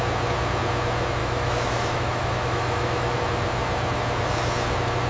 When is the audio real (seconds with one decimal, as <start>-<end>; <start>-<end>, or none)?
0.0-1.2; 3.2-5.1